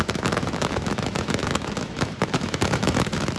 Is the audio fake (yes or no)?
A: yes